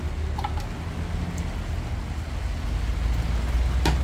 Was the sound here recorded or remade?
recorded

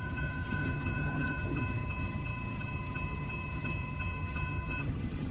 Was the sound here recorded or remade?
remade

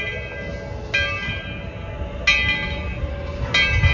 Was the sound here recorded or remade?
recorded